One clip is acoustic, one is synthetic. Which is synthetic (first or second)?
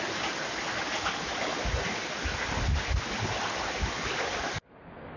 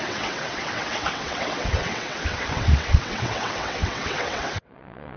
second